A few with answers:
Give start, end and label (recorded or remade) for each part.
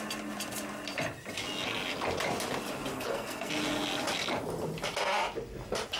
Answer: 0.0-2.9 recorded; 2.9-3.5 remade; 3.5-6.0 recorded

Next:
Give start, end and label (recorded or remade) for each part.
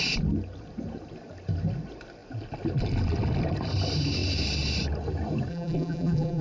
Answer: 0.0-5.5 recorded; 5.5-6.4 remade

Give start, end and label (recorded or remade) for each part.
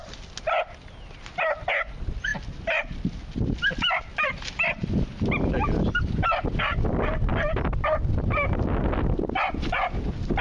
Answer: 0.0-10.4 recorded